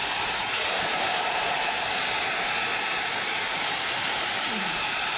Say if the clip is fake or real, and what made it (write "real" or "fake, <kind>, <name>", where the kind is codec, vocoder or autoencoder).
fake, vocoder, BigVGAN v2